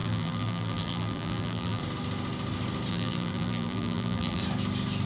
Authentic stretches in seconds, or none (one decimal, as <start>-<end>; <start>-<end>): 1.8-2.9; 4.4-5.1